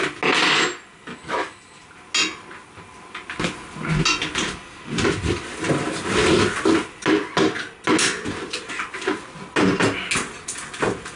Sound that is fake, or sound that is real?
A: real